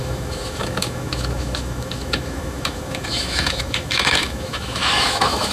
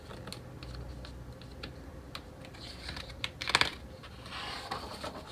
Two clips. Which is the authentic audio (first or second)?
second